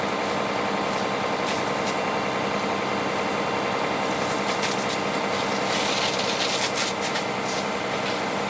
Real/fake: real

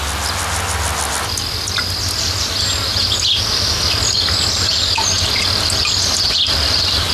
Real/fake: real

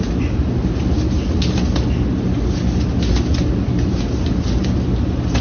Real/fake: real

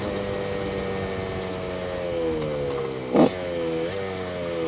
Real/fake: real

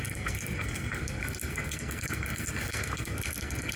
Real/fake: fake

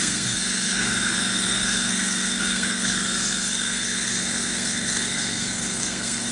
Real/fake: fake